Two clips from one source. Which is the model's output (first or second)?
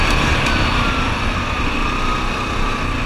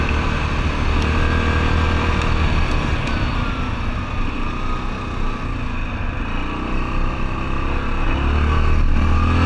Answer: first